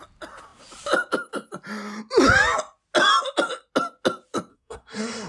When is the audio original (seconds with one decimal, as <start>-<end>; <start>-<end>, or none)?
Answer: 0.0-4.5